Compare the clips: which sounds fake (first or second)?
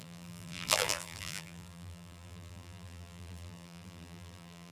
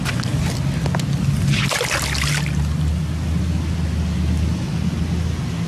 first